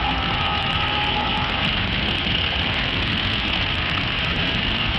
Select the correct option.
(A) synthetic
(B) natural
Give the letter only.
A